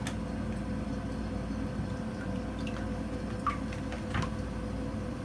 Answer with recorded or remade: recorded